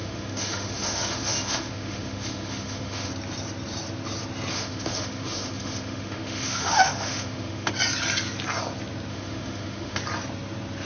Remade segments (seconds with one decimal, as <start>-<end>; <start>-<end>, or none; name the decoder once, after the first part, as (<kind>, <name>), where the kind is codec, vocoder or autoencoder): 0.0-3.1 (autoencoder, DAC-VAE); 4.5-7.7; 9.1-10.0